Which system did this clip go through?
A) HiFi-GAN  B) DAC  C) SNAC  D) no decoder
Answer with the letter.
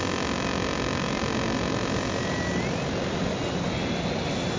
D